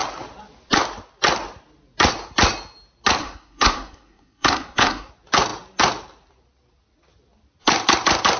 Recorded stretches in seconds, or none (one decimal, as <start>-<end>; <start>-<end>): 0.0-3.2; 5.1-8.4